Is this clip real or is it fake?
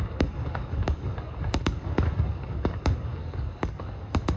fake